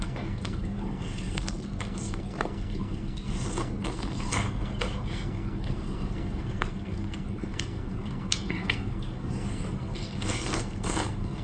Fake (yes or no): yes